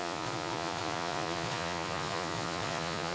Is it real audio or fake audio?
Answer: fake